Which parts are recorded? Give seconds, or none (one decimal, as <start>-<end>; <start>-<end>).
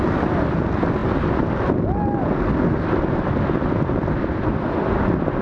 0.0-5.4